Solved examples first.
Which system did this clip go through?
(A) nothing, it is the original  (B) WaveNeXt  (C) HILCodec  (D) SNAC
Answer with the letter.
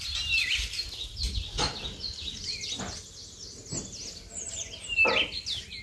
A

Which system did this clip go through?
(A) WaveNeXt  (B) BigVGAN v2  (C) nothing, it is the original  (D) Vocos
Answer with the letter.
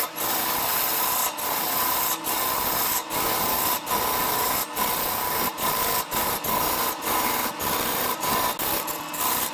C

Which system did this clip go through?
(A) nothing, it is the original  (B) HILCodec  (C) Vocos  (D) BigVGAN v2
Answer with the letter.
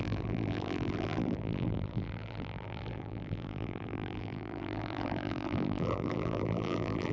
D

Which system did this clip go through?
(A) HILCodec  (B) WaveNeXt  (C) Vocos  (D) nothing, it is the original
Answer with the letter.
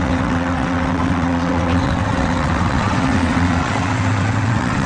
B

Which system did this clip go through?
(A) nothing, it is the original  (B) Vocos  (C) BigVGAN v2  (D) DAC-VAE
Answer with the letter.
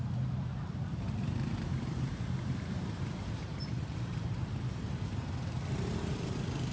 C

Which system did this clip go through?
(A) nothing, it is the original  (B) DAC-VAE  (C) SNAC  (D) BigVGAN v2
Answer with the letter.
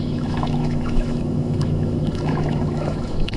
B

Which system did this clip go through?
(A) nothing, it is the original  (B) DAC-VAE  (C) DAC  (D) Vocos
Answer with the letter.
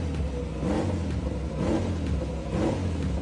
A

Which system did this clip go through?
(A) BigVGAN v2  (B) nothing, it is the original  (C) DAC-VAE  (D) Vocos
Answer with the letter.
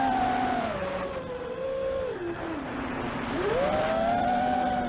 A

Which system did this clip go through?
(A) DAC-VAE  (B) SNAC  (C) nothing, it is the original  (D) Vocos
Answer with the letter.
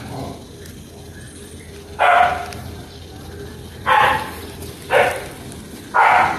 C